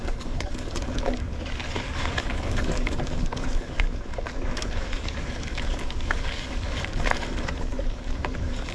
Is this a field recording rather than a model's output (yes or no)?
no